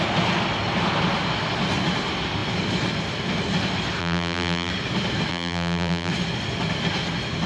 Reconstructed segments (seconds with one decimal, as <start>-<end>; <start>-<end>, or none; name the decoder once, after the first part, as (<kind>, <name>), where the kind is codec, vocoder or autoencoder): 4.0-4.7 (vocoder, BigVGAN v2); 5.3-6.1